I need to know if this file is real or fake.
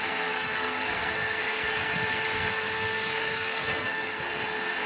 fake